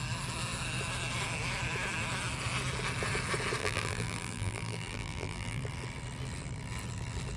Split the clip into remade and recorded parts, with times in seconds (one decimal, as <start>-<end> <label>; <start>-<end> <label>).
0.0-3.6 recorded; 3.6-5.6 remade; 5.6-7.4 recorded